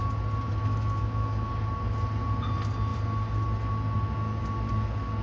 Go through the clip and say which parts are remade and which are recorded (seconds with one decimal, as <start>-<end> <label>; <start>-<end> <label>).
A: 0.0-0.6 recorded; 0.6-1.5 remade; 1.5-5.2 recorded